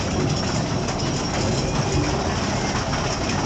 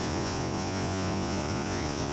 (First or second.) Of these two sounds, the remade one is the second